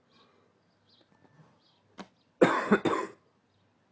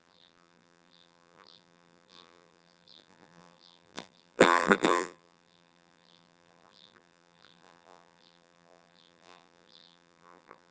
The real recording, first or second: first